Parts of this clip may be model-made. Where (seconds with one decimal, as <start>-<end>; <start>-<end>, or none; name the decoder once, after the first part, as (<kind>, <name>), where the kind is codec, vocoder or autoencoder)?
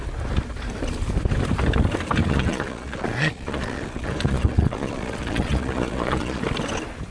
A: 2.2-6.4 (vocoder, Vocos)